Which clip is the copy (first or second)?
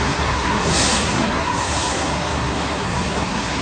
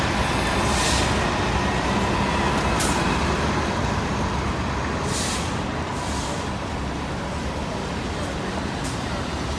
first